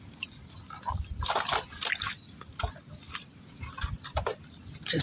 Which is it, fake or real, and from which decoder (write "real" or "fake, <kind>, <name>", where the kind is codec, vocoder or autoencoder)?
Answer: real